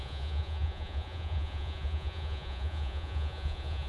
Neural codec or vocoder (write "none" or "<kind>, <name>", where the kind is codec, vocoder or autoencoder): vocoder, Vocos